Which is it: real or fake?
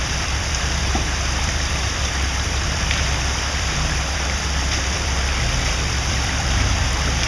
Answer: fake